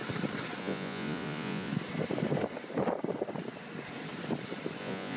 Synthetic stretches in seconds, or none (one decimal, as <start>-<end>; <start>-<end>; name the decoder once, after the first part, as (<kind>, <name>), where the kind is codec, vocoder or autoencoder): 0.6-1.7 (vocoder, Vocos); 4.8-5.2